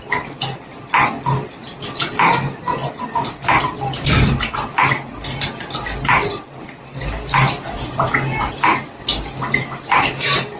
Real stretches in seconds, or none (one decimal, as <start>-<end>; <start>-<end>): 0.0-10.6